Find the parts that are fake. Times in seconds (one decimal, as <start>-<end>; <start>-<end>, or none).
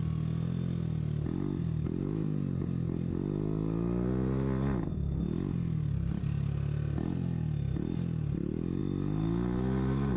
none